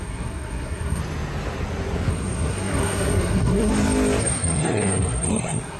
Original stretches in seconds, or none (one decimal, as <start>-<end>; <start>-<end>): 1.0-2.1; 3.7-4.2